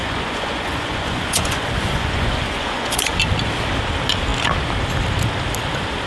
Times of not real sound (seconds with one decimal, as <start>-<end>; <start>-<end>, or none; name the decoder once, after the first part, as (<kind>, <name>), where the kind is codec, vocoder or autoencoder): 0.0-3.2 (vocoder, Vocos)